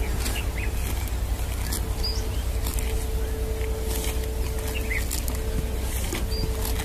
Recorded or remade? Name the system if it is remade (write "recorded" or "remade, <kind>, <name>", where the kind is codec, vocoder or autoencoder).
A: recorded